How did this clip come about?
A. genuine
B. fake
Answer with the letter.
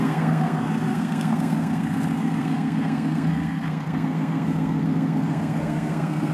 B